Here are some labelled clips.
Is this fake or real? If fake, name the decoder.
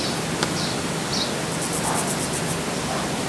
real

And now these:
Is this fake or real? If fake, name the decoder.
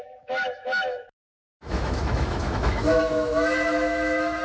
fake, autoencoder, DAC-VAE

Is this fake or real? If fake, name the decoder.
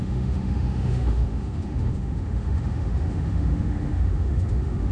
fake, autoencoder, DAC-VAE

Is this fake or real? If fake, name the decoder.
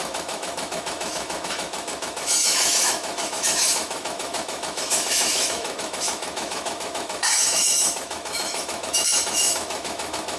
fake, autoencoder, DAC-VAE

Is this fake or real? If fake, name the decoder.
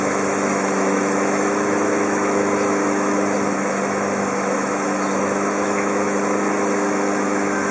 fake, autoencoder, DAC-VAE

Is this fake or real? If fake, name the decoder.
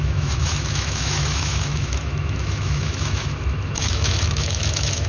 fake, autoencoder, DAC-VAE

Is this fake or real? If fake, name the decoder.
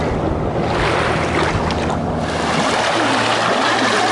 real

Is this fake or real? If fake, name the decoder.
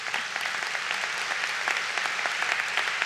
real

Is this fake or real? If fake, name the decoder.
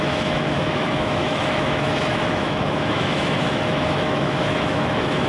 fake, autoencoder, DAC-VAE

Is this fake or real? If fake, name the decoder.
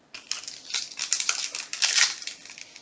real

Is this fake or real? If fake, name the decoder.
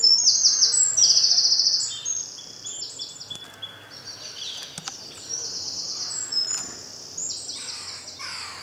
real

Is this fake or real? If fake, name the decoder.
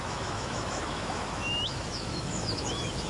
fake, autoencoder, DAC-VAE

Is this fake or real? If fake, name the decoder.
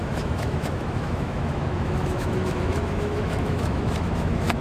fake, autoencoder, DAC-VAE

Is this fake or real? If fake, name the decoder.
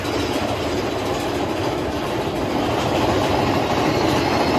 real